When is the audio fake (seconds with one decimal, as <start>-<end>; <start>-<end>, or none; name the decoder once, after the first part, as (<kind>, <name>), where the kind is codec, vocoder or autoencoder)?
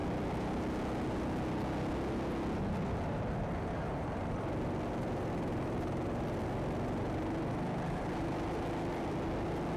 none